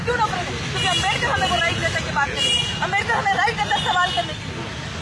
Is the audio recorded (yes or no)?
yes